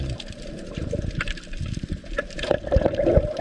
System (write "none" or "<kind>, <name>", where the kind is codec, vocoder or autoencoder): vocoder, BigVGAN v2